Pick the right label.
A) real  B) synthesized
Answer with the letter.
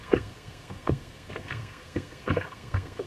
B